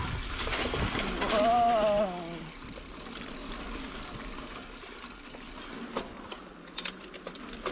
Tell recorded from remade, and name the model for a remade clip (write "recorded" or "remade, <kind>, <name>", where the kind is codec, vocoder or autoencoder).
recorded